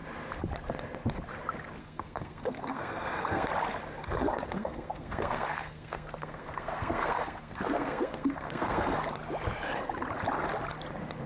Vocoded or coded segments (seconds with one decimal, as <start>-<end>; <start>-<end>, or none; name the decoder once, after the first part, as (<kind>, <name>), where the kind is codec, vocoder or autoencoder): 1.8-3.5 (codec, SNAC); 4.0-9.0